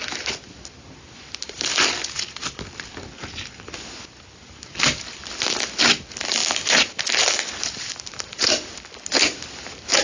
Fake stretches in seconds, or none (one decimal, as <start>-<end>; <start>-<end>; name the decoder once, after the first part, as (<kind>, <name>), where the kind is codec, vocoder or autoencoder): none